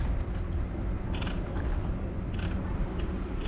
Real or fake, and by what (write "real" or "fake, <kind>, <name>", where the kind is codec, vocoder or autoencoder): real